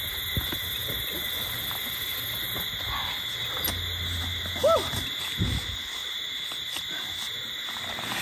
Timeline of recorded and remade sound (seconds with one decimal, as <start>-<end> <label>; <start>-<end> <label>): 0.0-8.2 recorded